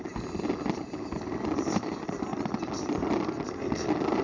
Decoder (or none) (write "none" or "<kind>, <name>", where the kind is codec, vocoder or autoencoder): none